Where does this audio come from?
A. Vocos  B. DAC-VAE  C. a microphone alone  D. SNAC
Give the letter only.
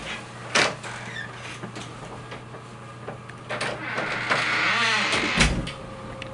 C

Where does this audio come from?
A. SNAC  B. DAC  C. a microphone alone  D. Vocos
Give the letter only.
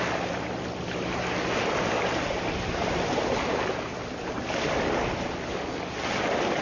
C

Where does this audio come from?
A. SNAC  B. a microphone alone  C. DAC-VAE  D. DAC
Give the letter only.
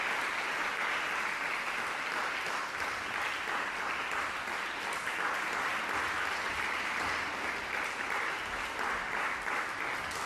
B